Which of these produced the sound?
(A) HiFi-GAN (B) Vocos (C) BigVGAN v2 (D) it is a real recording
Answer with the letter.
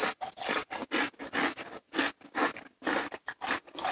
D